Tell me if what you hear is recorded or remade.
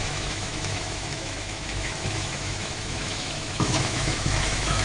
remade